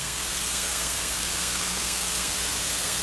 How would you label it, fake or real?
fake